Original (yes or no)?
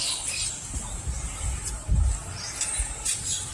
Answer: yes